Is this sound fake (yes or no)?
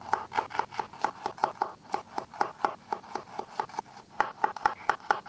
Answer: no